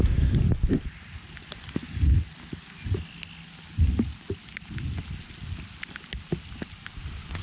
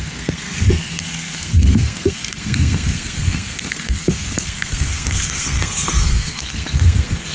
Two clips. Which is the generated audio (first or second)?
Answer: second